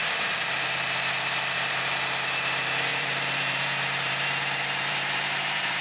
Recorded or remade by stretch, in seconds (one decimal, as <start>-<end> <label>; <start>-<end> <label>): 0.0-2.9 recorded; 2.9-5.8 remade